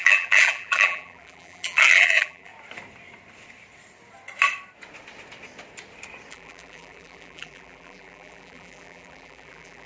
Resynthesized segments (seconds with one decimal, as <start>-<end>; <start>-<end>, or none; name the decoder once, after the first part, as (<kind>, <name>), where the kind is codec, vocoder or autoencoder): 0.0-2.5 (vocoder, BigVGAN v2); 6.3-9.9